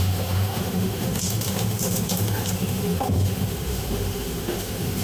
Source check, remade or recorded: remade